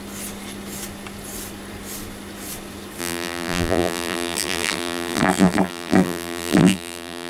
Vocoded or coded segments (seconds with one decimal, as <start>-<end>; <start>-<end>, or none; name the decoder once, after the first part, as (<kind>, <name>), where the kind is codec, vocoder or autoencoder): 3.0-7.3 (vocoder, BigVGAN v2)